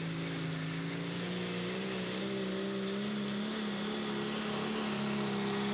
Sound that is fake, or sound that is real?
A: real